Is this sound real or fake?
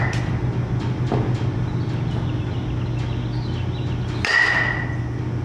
real